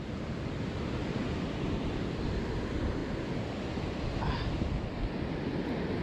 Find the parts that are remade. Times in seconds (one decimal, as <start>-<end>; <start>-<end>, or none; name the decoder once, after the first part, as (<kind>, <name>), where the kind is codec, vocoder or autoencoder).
none